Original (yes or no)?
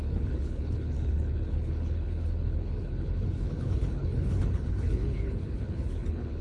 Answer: no